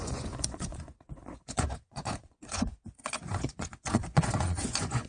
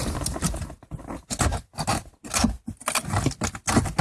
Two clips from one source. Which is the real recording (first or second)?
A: second